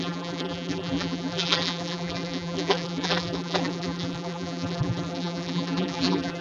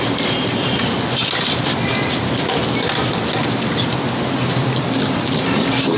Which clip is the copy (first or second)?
first